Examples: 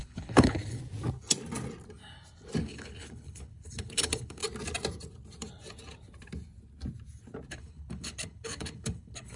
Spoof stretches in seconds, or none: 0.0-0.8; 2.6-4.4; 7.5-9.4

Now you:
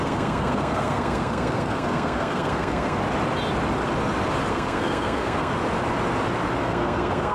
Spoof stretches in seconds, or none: 0.0-3.0; 4.5-5.5; 6.6-7.3

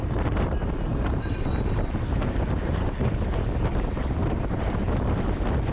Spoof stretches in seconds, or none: 0.9-3.1

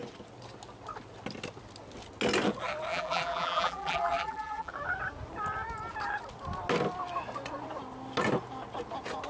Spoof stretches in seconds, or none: 2.9-4.7

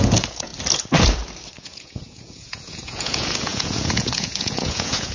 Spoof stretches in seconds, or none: 0.0-0.5; 1.6-5.1

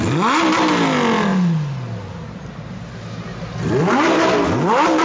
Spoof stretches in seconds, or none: none

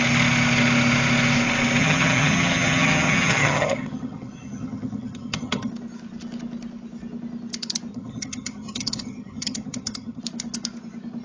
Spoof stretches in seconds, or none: 1.8-5.7; 7.9-10.2